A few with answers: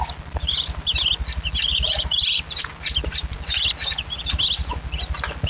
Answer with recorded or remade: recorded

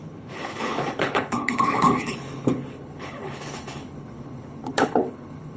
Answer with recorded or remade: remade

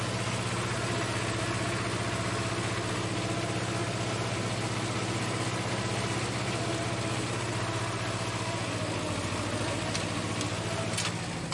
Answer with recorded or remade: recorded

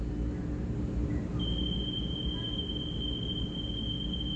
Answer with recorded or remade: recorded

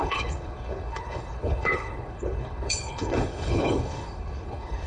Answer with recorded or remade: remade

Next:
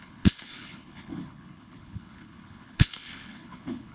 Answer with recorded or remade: remade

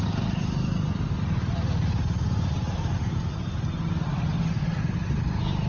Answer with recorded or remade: recorded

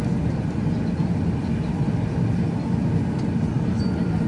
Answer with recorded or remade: recorded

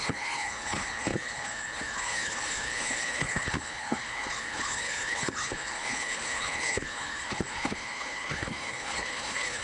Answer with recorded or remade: remade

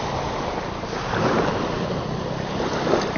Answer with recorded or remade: recorded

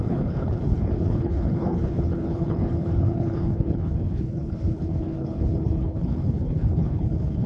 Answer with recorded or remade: remade